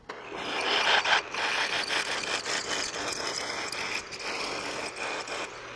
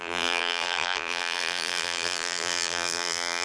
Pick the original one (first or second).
first